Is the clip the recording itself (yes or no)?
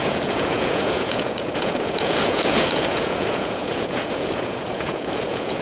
no